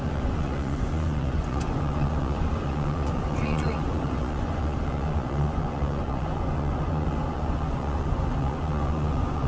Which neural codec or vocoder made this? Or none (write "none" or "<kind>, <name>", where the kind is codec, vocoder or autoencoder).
vocoder, Vocos